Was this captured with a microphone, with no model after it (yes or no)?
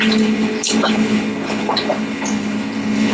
no